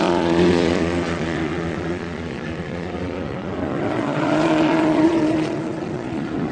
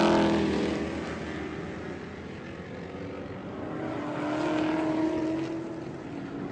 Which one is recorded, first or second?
second